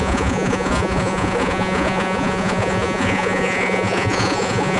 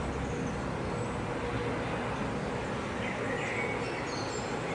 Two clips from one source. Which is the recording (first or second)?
second